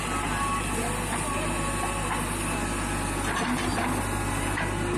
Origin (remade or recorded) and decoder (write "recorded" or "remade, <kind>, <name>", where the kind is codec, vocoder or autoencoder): recorded